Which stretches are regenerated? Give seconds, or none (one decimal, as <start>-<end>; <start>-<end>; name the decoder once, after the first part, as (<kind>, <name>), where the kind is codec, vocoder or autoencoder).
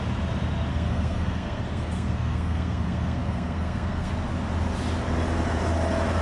0.7-4.1 (codec, SNAC)